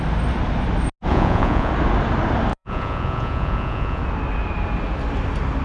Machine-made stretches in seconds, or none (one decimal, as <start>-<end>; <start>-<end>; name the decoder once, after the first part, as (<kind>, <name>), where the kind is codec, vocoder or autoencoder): 1.1-1.7 (vocoder, Vocos); 2.5-4.0